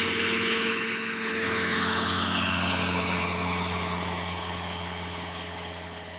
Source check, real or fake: fake